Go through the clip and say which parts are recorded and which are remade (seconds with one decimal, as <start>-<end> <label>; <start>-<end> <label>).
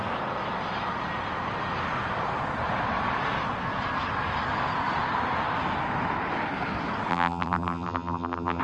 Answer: 0.0-7.1 recorded; 7.1-8.6 remade